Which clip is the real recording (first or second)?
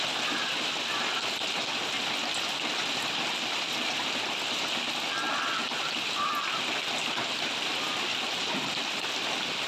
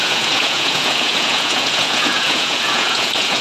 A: first